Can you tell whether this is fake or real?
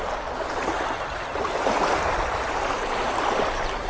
real